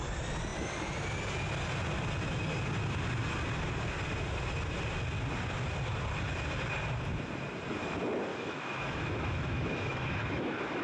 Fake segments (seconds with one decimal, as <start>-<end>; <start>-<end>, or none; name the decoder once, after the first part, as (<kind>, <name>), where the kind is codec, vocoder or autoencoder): 8.3-10.8 (autoencoder, DAC-VAE)